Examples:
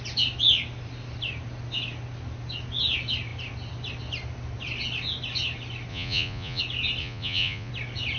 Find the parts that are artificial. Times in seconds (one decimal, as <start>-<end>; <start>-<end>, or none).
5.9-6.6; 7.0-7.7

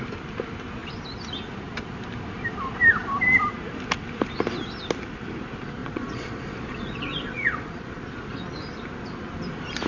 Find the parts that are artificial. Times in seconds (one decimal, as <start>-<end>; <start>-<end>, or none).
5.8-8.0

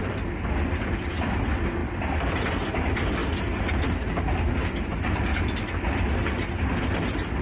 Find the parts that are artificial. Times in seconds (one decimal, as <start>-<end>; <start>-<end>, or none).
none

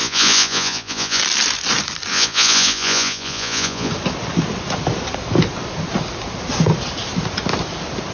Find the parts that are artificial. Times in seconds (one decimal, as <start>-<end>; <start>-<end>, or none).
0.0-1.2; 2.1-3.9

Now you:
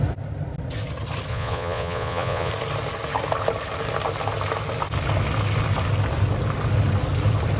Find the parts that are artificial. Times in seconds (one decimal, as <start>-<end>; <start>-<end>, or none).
1.3-2.5

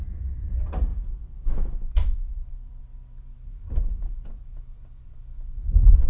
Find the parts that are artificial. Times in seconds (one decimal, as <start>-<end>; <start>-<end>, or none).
none

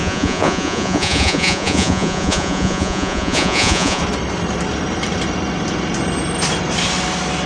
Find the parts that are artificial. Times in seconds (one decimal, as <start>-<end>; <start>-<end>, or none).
0.0-4.0